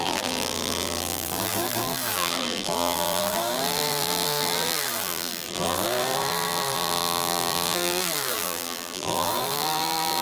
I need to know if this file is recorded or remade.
remade